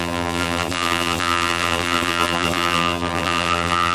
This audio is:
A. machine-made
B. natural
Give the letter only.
A